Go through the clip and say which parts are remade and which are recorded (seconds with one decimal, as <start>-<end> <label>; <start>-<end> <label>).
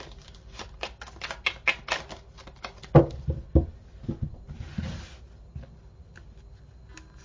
0.0-7.2 recorded